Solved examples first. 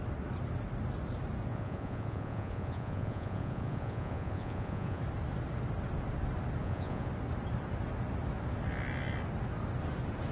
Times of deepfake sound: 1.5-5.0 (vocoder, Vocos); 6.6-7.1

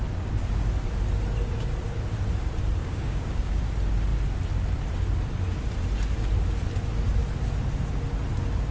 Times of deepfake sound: 2.8-3.6 (codec, DAC)

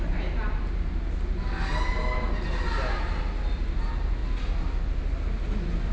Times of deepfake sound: none